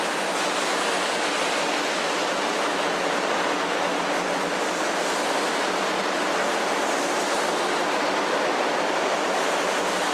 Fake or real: real